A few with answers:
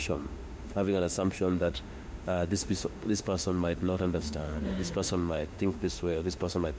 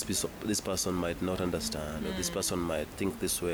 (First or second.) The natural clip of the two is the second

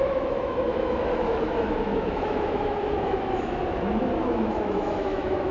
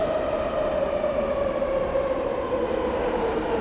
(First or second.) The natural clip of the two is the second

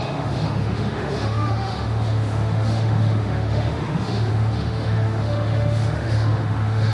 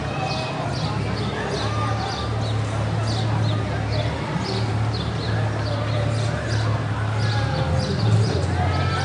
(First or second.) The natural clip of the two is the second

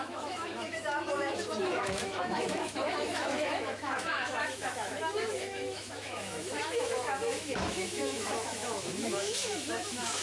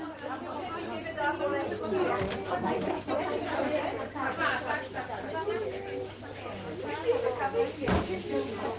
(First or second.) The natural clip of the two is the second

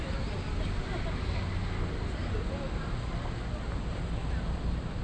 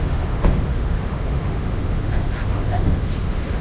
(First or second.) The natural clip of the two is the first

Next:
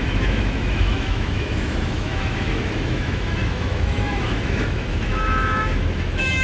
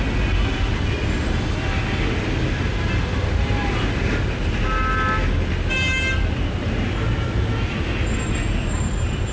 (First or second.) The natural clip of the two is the second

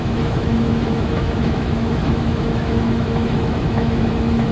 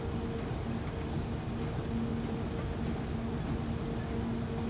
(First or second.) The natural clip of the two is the second